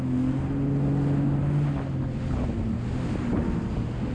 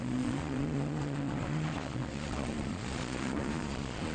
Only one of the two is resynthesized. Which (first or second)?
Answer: second